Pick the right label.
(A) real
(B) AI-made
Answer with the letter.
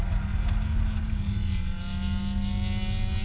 A